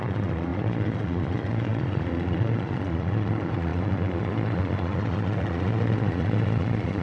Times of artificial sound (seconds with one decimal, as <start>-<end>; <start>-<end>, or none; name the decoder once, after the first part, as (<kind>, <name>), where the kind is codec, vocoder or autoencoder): 0.0-7.0 (vocoder, Vocos)